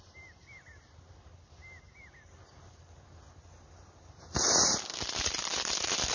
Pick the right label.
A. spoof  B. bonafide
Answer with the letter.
B